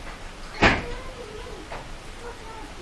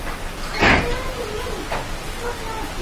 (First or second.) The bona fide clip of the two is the second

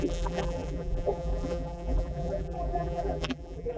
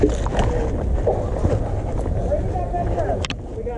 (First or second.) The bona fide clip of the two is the second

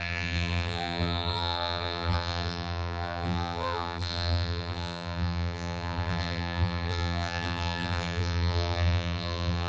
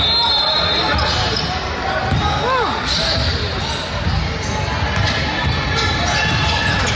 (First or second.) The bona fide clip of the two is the second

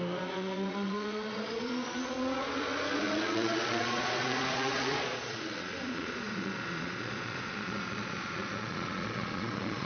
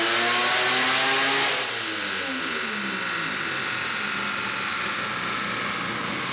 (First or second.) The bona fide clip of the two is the second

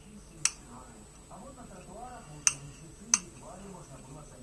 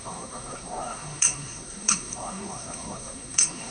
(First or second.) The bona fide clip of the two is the first